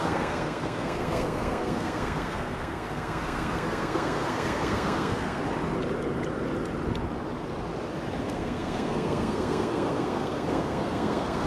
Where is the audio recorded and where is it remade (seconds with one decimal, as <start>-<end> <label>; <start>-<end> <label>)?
0.0-5.4 remade; 5.4-8.2 recorded; 8.2-11.5 remade